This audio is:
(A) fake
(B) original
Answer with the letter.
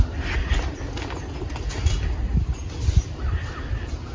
B